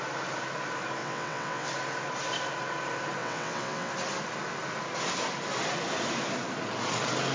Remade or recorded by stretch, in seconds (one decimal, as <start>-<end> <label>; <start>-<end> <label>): 0.0-1.0 recorded; 1.0-1.7 remade; 1.7-3.2 recorded; 3.2-3.9 remade; 3.9-7.3 recorded